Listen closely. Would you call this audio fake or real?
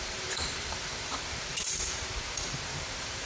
fake